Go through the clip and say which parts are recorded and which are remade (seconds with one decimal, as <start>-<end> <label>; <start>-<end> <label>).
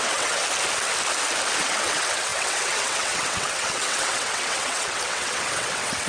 0.0-0.4 remade; 0.4-1.6 recorded; 1.6-6.1 remade